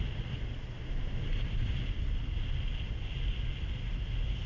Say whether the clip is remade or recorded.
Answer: recorded